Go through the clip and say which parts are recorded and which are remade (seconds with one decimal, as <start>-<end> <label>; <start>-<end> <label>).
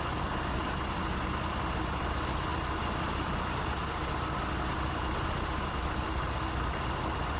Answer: 0.0-7.4 recorded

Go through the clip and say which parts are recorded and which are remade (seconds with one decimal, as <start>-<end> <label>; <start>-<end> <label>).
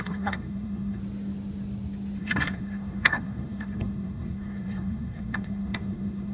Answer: 0.0-1.0 remade; 1.0-2.2 recorded; 2.2-6.3 remade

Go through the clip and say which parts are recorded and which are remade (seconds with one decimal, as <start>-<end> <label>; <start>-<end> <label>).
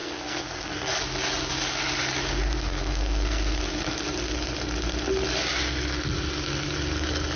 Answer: 0.0-1.0 remade; 1.0-2.3 recorded; 2.3-3.6 remade; 3.6-7.4 recorded